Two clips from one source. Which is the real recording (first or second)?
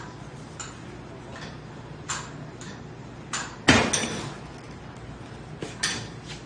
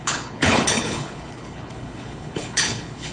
first